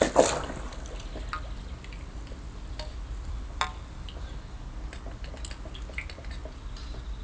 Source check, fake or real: real